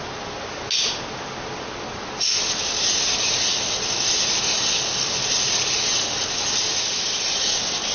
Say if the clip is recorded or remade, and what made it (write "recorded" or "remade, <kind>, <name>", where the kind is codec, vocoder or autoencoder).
recorded